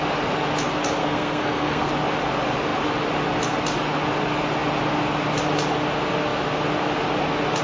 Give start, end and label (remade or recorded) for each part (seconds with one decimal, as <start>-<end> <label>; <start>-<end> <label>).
0.0-1.0 recorded; 1.0-1.9 remade; 1.9-7.6 recorded